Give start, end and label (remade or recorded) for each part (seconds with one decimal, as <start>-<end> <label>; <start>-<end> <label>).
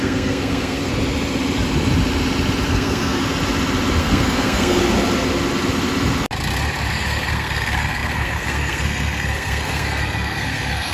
0.0-0.9 remade; 0.9-2.7 recorded; 2.7-3.2 remade; 3.2-4.0 recorded; 4.0-4.8 remade; 4.8-6.9 recorded; 6.9-10.9 remade